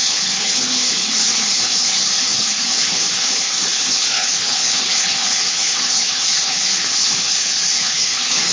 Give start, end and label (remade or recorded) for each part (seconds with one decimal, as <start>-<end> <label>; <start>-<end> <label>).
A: 0.0-8.5 remade